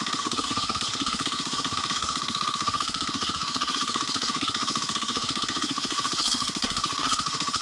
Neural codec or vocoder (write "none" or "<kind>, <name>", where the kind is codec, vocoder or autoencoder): codec, SNAC